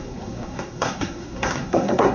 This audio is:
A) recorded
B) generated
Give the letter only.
B